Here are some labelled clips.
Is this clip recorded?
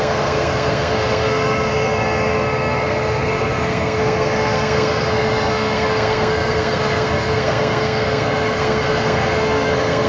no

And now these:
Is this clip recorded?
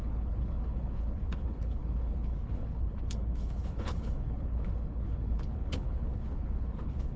no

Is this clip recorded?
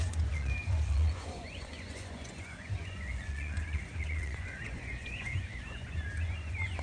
no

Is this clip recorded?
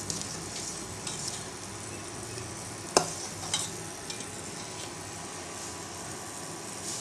yes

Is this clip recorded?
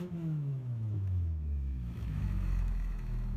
no